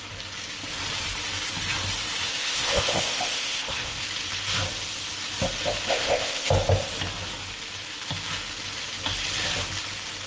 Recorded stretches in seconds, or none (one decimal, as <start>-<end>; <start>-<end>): 0.0-2.3; 4.0-5.9; 6.5-10.3